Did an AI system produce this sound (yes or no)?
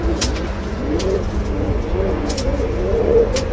yes